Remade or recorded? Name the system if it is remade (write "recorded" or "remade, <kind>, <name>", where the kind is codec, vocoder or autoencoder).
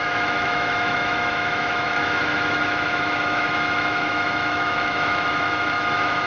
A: remade, autoencoder, DAC-VAE